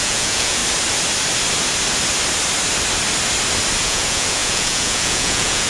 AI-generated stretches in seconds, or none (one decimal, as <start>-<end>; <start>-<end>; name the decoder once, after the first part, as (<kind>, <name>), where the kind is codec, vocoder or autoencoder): 0.0-0.6 (vocoder, Vocos); 3.8-5.7